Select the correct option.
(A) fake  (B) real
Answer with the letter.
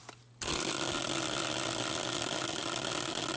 B